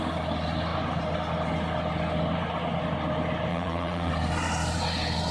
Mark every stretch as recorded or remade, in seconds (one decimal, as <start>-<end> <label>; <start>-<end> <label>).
0.0-3.5 recorded; 3.5-4.1 remade; 4.1-5.3 recorded

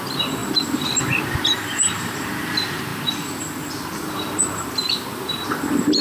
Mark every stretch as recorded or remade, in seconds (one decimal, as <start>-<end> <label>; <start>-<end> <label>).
0.0-6.0 remade